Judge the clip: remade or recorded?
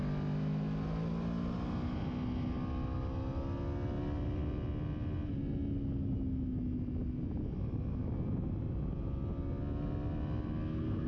recorded